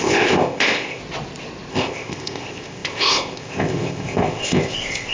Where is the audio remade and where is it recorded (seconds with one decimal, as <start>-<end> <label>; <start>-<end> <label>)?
0.0-1.0 remade; 1.0-1.7 recorded; 1.7-5.1 remade